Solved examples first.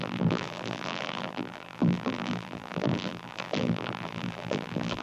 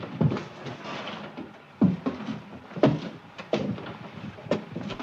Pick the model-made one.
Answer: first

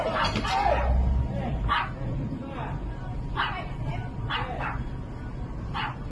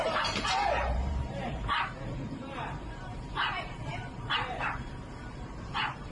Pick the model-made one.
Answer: second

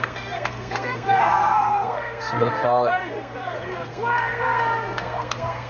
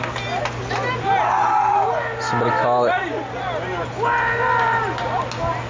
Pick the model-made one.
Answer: first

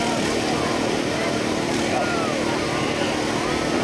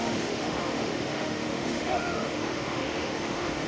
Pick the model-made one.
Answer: second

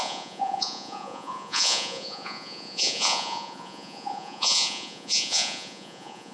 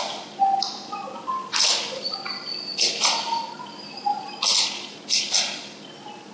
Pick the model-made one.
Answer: first